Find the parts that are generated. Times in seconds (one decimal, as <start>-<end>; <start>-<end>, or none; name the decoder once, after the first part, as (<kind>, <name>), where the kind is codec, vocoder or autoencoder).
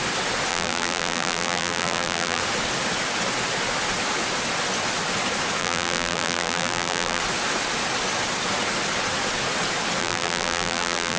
0.5-2.4 (vocoder, BigVGAN v2); 5.6-7.2; 10.0-11.2